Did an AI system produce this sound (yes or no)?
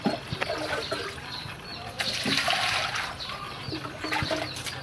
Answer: no